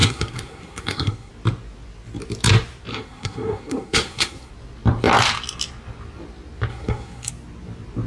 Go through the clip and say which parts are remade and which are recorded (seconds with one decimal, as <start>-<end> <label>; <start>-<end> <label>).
0.0-1.3 remade; 1.3-2.9 recorded; 2.9-4.5 remade; 4.5-6.7 recorded; 6.7-7.3 remade; 7.3-8.1 recorded